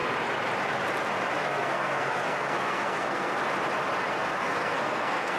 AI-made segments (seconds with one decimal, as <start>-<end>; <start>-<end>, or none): 1.4-3.4; 4.1-5.4